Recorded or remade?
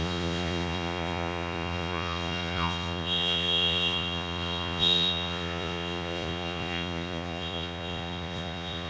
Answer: remade